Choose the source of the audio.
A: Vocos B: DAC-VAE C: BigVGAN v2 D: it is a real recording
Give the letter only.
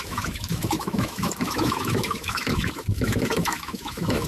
B